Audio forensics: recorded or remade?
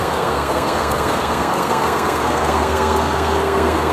remade